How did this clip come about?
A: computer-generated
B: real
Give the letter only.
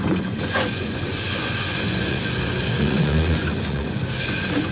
A